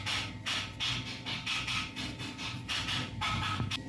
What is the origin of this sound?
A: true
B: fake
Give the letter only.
A